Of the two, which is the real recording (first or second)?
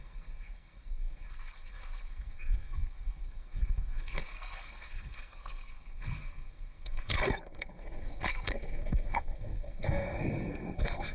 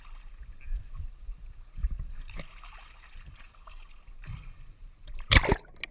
second